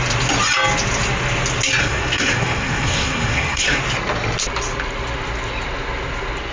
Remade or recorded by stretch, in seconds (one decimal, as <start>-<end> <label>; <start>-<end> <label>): 0.0-1.8 recorded; 1.8-3.8 remade; 3.8-6.5 recorded